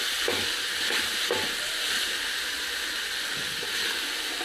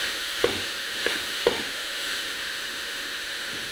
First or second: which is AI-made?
second